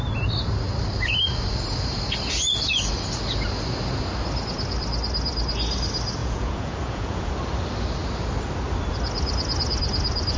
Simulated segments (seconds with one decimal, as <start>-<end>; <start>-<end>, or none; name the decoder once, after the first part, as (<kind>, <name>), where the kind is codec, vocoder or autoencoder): 6.2-7.3 (vocoder, Vocos)